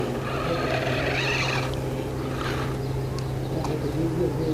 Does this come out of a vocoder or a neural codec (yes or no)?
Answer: no